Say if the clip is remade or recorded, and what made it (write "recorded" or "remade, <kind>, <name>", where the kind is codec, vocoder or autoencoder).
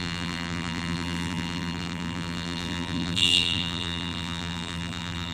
remade, vocoder, BigVGAN v2